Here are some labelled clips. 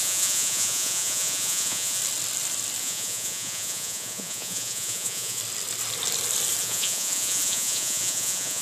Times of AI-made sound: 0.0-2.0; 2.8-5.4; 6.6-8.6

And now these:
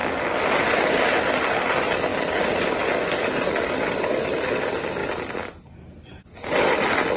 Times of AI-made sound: none